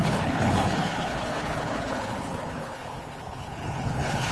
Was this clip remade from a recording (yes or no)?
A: yes